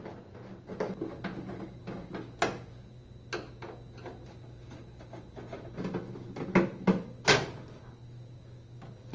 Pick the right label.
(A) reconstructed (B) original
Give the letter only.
B